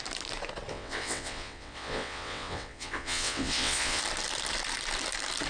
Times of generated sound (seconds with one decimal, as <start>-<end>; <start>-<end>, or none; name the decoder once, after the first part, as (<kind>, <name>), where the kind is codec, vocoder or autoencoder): 0.7-4.0 (vocoder, WaveNeXt)